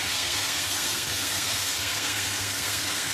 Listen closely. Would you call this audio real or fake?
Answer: fake